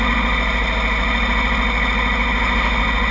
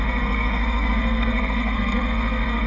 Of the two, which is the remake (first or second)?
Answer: second